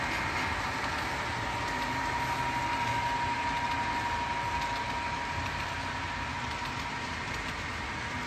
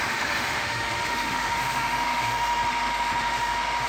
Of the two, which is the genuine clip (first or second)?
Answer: first